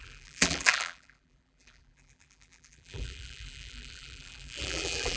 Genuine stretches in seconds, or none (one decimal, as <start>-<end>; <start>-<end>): none